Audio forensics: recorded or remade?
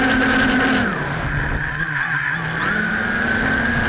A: recorded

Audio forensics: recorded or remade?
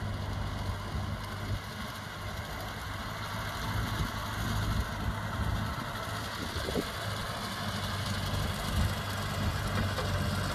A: recorded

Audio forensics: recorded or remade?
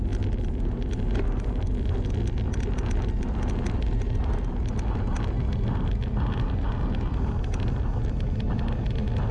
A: recorded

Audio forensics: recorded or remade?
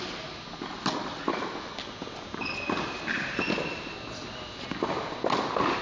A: recorded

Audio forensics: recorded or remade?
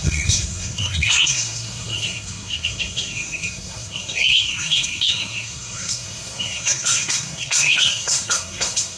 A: remade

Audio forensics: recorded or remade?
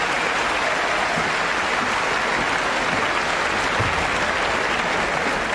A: recorded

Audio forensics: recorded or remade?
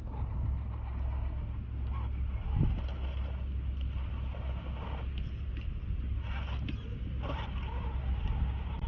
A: recorded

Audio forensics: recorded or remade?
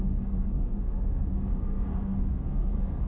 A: remade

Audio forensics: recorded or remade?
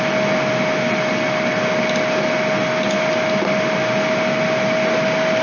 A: recorded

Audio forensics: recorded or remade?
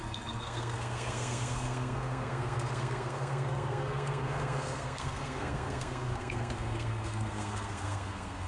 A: remade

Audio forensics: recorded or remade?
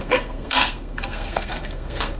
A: remade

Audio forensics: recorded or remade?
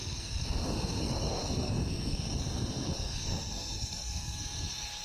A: remade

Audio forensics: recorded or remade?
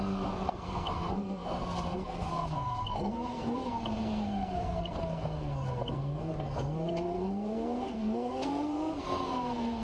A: remade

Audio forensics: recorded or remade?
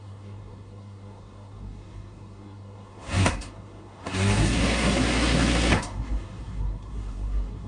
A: remade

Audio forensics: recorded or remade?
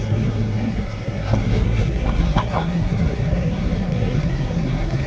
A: remade